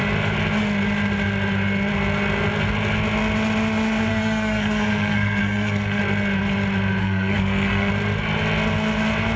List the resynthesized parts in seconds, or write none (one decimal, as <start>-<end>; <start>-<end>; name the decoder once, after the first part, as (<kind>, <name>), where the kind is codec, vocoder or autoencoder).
4.1-6.0 (codec, SNAC); 7.0-7.9